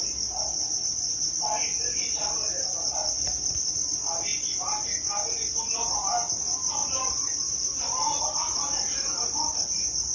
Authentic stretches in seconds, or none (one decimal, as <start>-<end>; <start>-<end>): 3.6-6.8; 8.2-10.1